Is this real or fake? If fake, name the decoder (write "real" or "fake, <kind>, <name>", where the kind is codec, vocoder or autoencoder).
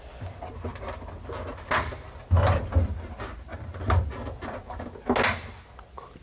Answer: real